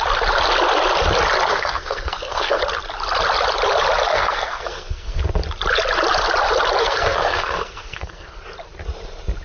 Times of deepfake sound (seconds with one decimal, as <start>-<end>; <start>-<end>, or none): 1.5-2.6; 4.1-5.2; 6.8-8.4